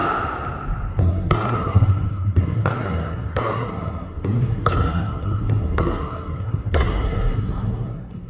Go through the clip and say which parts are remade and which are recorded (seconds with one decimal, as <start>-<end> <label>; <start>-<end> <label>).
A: 0.0-0.9 recorded; 0.9-8.3 remade